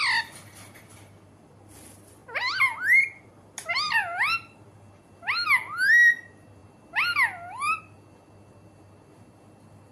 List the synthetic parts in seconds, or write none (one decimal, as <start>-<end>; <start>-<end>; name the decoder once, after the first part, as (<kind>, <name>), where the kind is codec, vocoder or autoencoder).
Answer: none